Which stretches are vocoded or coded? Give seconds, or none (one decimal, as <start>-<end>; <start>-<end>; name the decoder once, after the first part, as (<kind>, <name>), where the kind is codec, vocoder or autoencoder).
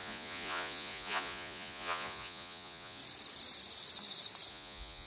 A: 0.0-3.0 (vocoder, Vocos); 4.5-5.1